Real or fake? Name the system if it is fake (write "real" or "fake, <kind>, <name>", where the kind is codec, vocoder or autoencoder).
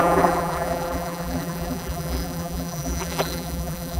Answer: fake, vocoder, BigVGAN v2